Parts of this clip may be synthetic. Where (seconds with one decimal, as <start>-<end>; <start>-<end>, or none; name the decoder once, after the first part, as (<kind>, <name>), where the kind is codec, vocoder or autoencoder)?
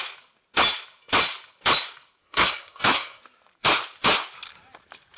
2.2-3.2 (codec, SNAC)